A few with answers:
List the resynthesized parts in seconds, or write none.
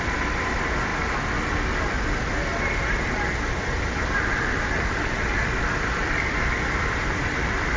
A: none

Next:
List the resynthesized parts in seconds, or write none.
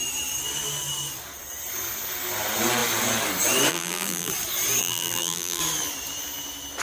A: 3.7-4.3 (vocoder, BigVGAN v2); 4.8-5.6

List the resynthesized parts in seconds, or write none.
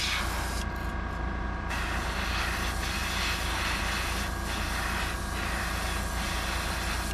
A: none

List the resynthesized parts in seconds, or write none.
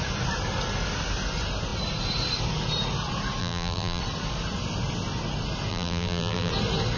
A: 3.4-4.0 (vocoder, BigVGAN v2); 5.7-6.5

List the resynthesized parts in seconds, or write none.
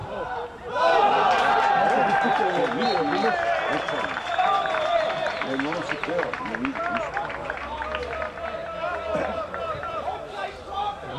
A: 0.0-1.1 (vocoder, BigVGAN v2); 4.5-6.9; 8.6-11.2